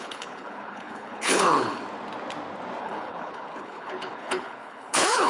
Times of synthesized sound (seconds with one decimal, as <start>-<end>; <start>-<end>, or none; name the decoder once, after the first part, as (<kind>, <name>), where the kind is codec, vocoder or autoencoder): 0.0-1.8 (codec, HILCodec); 2.8-5.3